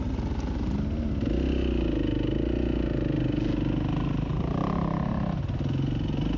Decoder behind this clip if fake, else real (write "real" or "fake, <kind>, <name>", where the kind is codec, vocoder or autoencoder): real